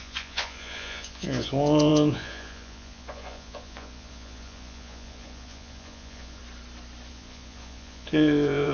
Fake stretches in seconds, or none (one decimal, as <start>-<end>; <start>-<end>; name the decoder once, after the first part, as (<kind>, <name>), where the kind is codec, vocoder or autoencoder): 0.0-6.4 (vocoder, Vocos); 7.1-8.7